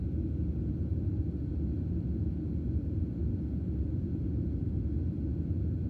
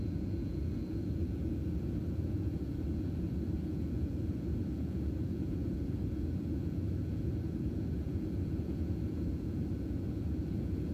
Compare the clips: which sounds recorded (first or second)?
first